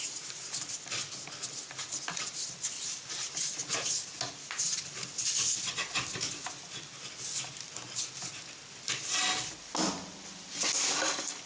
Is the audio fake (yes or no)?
no